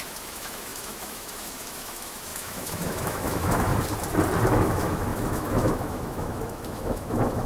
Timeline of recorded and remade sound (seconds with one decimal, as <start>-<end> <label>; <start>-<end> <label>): 0.0-3.7 remade; 3.7-4.5 recorded; 4.5-7.5 remade